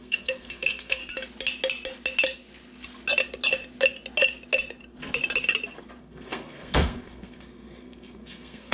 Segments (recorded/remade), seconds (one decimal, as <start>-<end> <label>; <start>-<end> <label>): 0.0-1.0 remade; 1.0-6.0 recorded; 6.0-8.7 remade